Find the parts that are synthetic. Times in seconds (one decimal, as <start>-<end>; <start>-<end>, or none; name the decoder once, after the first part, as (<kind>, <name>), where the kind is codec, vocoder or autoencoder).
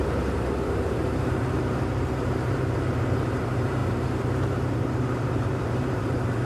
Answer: 0.0-6.5 (vocoder, BigVGAN v2)